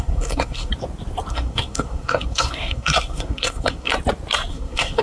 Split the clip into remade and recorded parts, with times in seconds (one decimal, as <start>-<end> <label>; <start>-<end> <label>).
0.0-0.7 remade; 0.7-1.3 recorded; 1.3-3.9 remade; 3.9-4.5 recorded; 4.5-5.0 remade